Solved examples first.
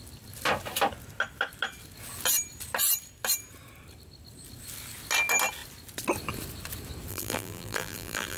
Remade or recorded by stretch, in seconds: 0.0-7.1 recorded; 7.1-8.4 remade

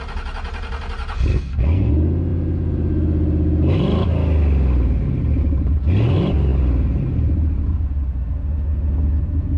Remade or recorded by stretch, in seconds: 0.0-1.3 recorded; 1.3-1.9 remade; 1.9-9.6 recorded

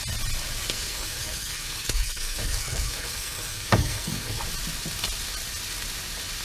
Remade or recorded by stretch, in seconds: 0.0-0.6 recorded; 0.6-4.4 remade; 4.4-6.4 recorded

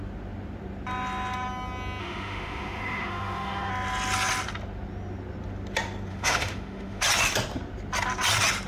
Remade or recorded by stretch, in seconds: 0.0-2.0 recorded; 2.0-3.7 remade; 3.7-6.1 recorded; 6.1-7.0 remade; 7.0-8.7 recorded

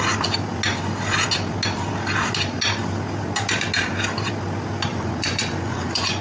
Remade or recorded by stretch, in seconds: 0.0-4.9 recorded; 4.9-6.2 remade

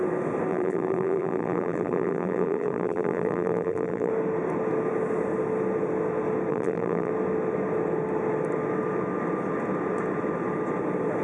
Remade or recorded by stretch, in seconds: 0.0-0.5 recorded; 0.5-4.1 remade; 4.1-6.5 recorded; 6.5-7.1 remade; 7.1-11.2 recorded

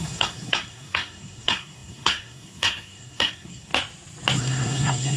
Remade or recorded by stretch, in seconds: 0.0-3.7 remade; 3.7-4.4 recorded; 4.4-5.2 remade

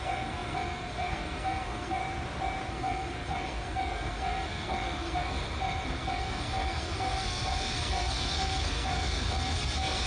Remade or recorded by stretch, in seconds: 0.0-2.0 remade; 2.0-2.7 recorded; 2.7-10.1 remade